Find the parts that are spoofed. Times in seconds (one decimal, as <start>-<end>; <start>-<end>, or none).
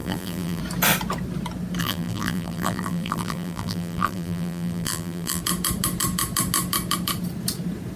0.0-0.6; 1.8-5.4